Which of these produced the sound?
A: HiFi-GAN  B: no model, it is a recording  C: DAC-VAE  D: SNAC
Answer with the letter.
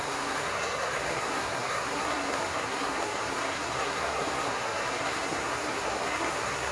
D